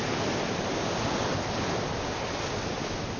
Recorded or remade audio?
recorded